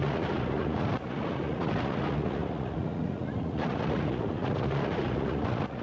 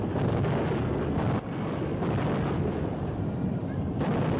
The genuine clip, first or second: second